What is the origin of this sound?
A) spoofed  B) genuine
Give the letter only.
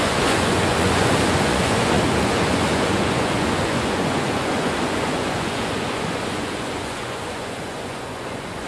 A